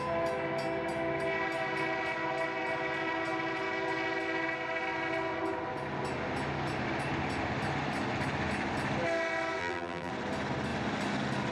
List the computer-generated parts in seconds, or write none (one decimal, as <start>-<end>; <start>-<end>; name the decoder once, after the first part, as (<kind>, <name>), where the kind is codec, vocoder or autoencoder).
9.6-10.1 (vocoder, BigVGAN v2)